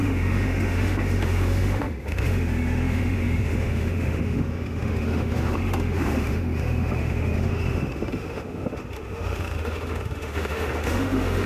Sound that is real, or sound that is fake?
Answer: fake